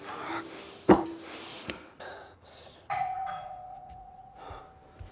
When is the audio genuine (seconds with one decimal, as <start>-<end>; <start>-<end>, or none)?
0.0-1.5; 4.6-5.1